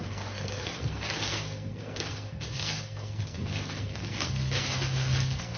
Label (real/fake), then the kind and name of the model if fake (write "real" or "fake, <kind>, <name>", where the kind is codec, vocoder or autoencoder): fake, codec, SNAC